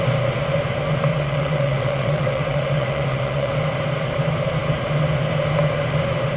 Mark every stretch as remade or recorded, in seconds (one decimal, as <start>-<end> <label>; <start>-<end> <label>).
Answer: 0.0-1.1 recorded; 1.1-3.5 remade; 3.5-6.4 recorded